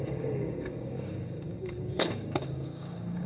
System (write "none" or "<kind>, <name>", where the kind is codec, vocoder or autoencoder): codec, DAC